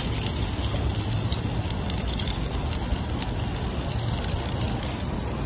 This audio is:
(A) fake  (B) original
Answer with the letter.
B